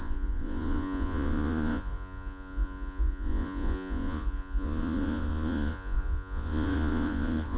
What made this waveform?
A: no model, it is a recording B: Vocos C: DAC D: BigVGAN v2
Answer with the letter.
B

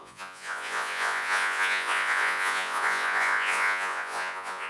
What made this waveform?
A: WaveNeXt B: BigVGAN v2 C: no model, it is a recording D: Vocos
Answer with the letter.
D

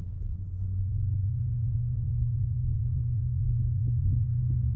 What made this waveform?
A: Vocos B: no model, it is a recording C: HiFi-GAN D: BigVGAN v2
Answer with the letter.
A